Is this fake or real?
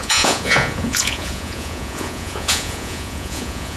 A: fake